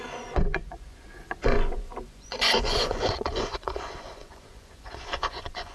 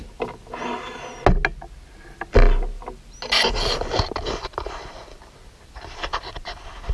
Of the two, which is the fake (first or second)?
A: first